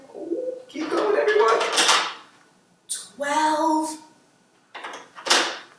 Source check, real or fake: real